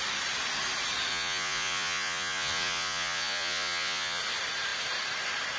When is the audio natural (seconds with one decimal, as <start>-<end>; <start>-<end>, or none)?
0.0-1.1; 4.2-5.6